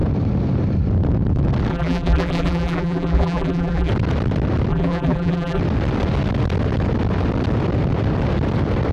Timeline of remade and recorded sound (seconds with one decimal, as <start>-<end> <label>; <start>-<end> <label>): 0.0-1.7 recorded; 1.7-3.9 remade; 3.9-4.7 recorded; 4.7-5.6 remade; 5.6-8.9 recorded